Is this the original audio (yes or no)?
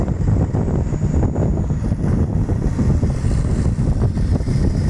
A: yes